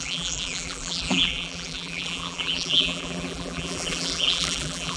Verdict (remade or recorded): remade